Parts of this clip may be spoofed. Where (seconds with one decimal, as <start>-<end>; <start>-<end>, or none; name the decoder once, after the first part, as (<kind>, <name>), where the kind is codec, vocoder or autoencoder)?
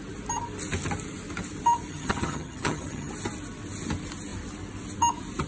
1.9-3.1 (vocoder, HiFi-GAN)